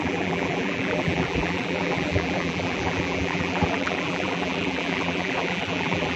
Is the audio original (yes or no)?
no